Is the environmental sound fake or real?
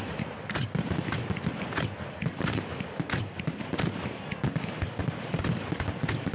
real